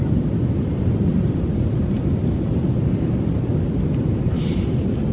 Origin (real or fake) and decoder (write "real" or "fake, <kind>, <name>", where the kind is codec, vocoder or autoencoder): real